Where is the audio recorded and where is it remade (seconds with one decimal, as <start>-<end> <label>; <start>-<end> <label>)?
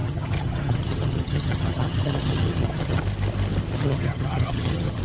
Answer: 0.0-3.0 remade; 3.0-3.7 recorded; 3.7-5.0 remade